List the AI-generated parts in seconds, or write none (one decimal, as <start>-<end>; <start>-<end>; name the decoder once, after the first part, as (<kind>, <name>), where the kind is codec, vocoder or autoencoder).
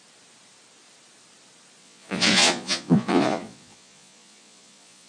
1.8-5.1 (vocoder, Vocos)